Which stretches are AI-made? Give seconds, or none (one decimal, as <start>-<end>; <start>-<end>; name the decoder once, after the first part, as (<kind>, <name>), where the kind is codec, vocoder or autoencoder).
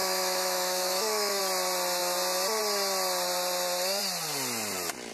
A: 0.0-1.4 (autoencoder, DAC-VAE)